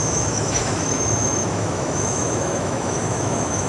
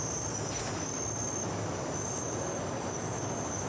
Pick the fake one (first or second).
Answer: first